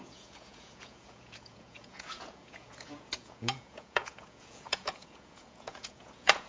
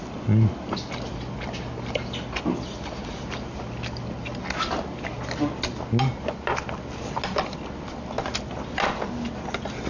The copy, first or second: first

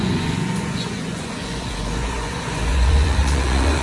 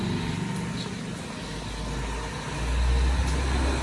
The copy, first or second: first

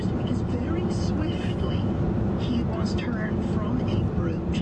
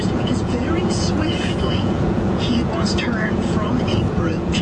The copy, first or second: second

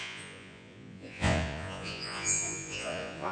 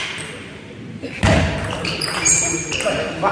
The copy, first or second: first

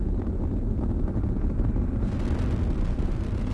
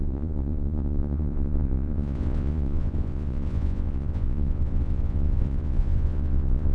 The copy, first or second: second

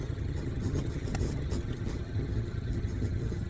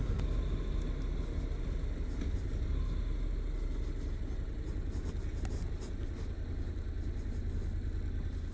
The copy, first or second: first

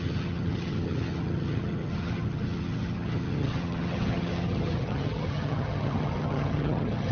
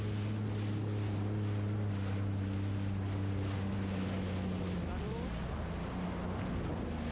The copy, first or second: first